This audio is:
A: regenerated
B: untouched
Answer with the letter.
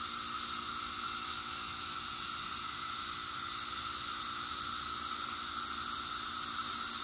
B